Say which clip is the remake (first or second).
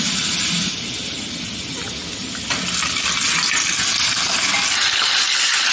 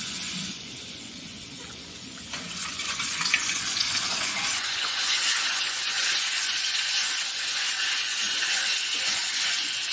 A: second